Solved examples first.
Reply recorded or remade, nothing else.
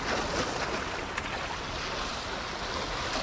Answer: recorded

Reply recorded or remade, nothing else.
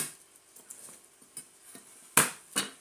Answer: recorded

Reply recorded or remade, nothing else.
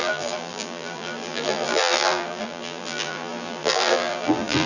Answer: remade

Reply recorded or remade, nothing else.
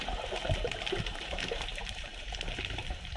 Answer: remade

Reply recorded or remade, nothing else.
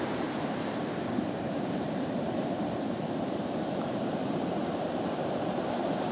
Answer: remade